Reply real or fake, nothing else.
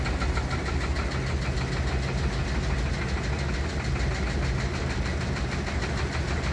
real